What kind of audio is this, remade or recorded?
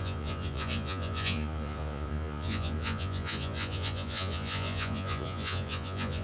remade